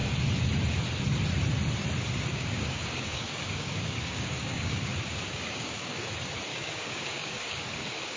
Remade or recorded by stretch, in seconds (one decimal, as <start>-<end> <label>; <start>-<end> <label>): 0.0-2.3 recorded; 2.3-6.1 remade; 6.1-6.5 recorded; 6.5-8.2 remade